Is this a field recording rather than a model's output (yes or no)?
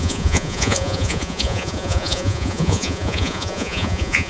no